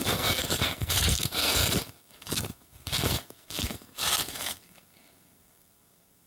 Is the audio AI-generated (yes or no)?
yes